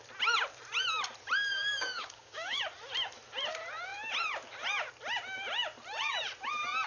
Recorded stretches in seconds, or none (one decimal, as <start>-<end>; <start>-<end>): 0.0-1.5; 2.6-6.9